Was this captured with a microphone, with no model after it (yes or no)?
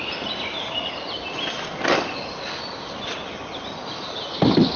yes